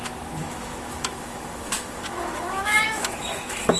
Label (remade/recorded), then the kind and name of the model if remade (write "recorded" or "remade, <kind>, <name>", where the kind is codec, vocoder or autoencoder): remade, autoencoder, DAC-VAE